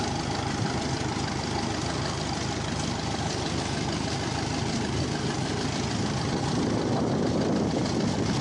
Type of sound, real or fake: real